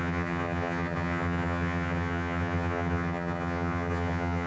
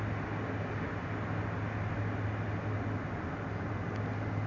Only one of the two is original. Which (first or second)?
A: second